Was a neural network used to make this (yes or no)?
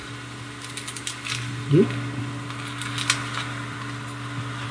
no